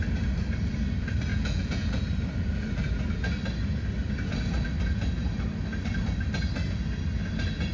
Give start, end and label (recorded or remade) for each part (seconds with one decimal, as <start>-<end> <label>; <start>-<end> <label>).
0.0-1.3 recorded; 1.3-2.0 remade; 2.0-7.7 recorded